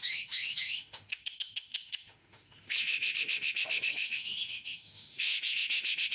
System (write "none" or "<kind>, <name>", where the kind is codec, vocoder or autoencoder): autoencoder, DAC-VAE